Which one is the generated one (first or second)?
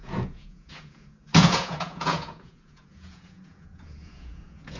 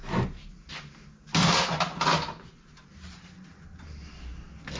first